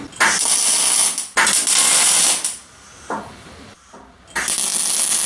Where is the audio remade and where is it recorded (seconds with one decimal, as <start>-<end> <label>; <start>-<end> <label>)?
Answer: 0.0-5.3 recorded